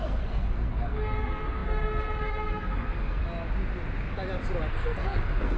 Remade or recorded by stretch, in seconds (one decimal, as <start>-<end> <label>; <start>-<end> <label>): 0.0-3.2 remade; 3.2-4.7 recorded; 4.7-5.6 remade